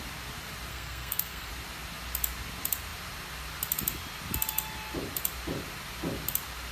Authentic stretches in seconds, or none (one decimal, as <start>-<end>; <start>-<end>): 0.0-0.7; 1.5-6.7